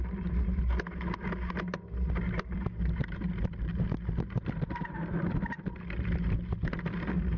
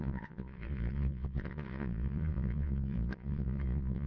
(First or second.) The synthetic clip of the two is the second